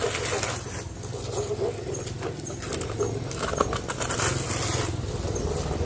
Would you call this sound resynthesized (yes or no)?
no